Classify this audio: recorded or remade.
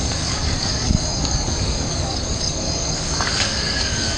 remade